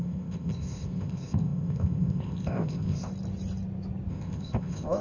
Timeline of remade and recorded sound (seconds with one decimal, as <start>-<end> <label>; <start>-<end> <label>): 0.0-3.1 remade; 3.1-4.1 recorded; 4.1-5.0 remade